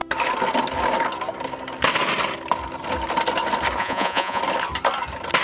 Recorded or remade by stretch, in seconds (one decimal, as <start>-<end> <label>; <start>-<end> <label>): 0.0-3.8 recorded; 3.8-4.4 remade; 4.4-5.4 recorded

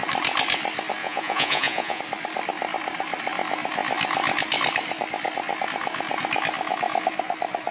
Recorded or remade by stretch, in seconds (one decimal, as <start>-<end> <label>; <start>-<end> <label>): 0.0-1.0 recorded; 1.0-2.0 remade; 2.0-7.7 recorded

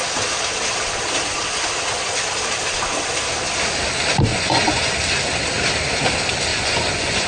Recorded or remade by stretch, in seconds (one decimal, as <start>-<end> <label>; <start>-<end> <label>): 0.0-4.3 recorded; 4.3-4.9 remade; 4.9-6.5 recorded; 6.5-7.3 remade

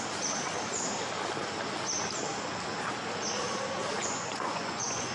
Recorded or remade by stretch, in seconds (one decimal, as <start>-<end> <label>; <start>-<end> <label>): 0.0-4.0 recorded; 4.0-5.1 remade

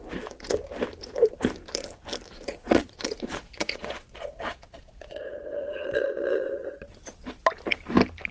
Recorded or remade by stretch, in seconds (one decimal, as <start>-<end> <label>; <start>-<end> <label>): 0.0-2.3 recorded; 2.3-6.9 remade; 6.9-8.3 recorded

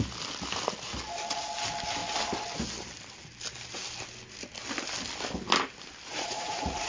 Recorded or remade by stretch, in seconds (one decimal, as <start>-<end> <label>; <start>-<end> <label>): 0.0-6.1 recorded; 6.1-6.9 remade

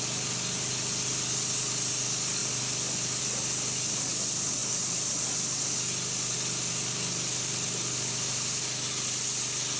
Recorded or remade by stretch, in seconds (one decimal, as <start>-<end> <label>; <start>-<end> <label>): 0.0-9.8 recorded